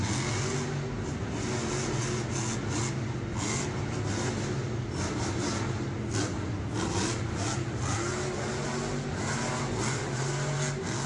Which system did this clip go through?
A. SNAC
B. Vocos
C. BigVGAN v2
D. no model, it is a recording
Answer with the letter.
D